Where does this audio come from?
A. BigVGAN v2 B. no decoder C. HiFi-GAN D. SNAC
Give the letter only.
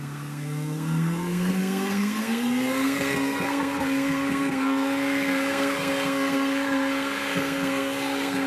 D